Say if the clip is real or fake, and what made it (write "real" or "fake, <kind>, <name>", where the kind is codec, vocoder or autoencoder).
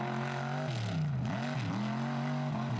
real